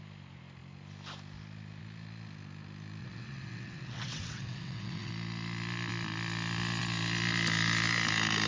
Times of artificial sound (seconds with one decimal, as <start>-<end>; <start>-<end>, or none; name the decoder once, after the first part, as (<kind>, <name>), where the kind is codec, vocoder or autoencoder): 3.0-5.1 (vocoder, WaveNeXt)